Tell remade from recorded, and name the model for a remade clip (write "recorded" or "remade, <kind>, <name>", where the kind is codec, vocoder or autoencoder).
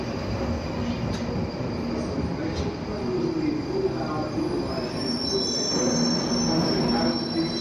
recorded